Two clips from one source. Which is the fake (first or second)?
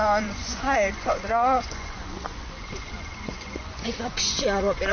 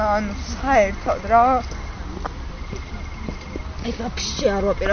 first